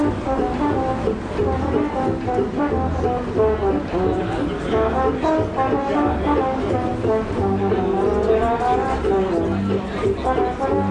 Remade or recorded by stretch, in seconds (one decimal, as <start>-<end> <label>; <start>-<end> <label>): 0.0-10.9 recorded